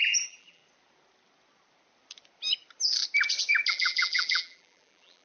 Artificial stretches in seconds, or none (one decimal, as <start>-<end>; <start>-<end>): 0.0-0.6; 3.7-5.2